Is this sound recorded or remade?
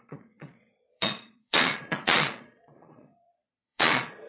remade